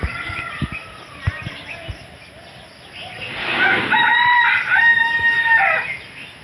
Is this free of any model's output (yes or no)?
yes